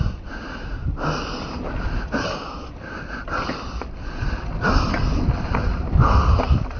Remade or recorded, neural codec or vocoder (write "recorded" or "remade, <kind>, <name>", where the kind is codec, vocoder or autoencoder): recorded